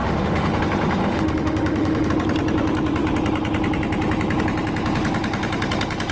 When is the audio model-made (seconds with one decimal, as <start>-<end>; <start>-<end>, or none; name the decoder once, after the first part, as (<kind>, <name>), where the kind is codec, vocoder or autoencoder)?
0.0-0.6 (autoencoder, DAC-VAE); 1.0-2.1